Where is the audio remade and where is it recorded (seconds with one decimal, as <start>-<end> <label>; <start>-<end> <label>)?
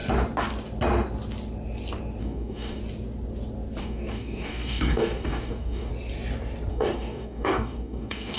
0.0-2.2 recorded; 2.2-2.8 remade; 2.8-3.8 recorded; 3.8-5.9 remade; 5.9-6.7 recorded; 6.7-8.4 remade